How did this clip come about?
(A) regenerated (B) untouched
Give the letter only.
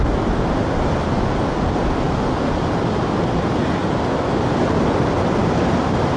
B